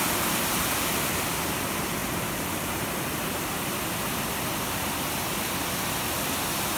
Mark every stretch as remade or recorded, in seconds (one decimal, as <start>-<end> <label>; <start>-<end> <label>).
0.0-6.8 recorded